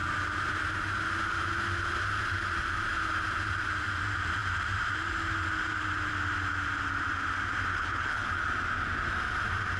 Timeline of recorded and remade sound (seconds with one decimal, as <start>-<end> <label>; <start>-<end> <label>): 0.0-7.7 recorded; 7.7-8.4 remade; 8.4-9.8 recorded